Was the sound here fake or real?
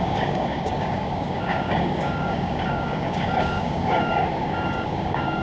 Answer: fake